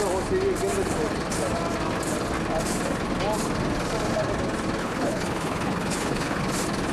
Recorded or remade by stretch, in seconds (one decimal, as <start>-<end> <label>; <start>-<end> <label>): 0.0-4.8 recorded; 4.8-6.4 remade; 6.4-6.9 recorded